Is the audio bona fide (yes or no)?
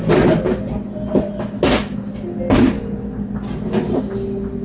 yes